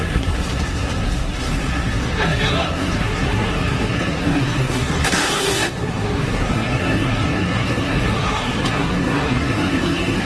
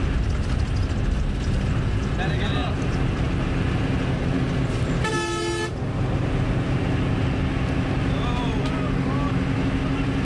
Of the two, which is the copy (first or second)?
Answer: first